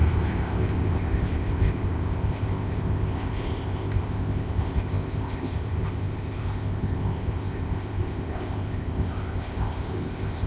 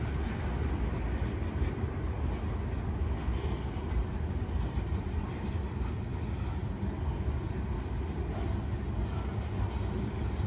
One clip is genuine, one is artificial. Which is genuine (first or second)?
second